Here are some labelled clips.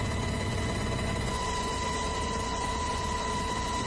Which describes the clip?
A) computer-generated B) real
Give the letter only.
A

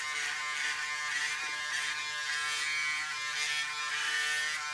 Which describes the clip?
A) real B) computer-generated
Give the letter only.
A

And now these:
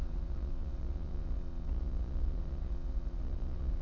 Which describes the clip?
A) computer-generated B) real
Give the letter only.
A